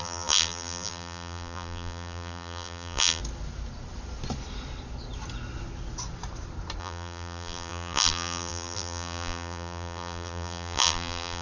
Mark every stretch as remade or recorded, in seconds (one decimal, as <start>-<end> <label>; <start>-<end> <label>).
0.0-3.2 remade; 3.2-6.8 recorded; 6.8-11.4 remade